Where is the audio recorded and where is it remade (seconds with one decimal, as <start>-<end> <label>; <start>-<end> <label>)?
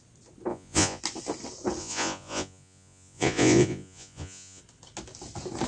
0.0-0.5 recorded; 0.5-1.0 remade; 1.0-1.8 recorded; 1.8-4.6 remade; 4.6-5.7 recorded